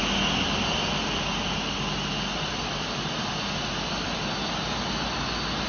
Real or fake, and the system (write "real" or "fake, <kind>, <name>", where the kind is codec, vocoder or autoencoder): real